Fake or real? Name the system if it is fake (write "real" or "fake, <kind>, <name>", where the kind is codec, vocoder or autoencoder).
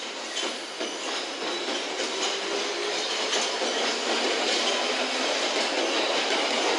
real